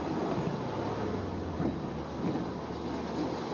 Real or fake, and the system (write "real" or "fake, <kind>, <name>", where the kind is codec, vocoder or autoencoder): real